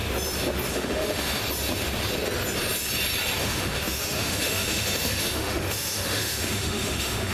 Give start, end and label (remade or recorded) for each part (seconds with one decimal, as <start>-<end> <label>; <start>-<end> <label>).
0.0-0.7 recorded; 0.7-1.4 remade; 1.4-3.4 recorded; 3.4-7.3 remade